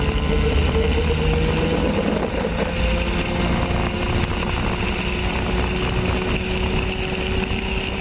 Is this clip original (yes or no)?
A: yes